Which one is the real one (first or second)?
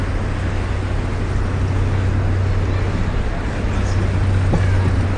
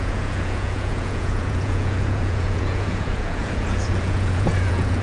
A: first